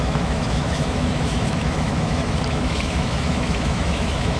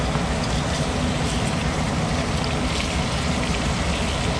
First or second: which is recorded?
second